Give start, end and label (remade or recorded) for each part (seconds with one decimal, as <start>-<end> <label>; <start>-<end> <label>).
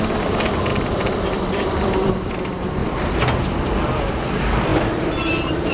0.0-2.8 remade; 2.8-4.0 recorded; 4.0-5.7 remade